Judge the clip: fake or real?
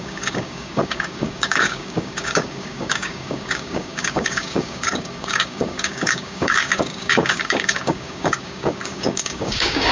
fake